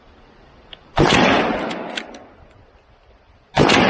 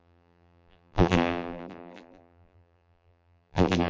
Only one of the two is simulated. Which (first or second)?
second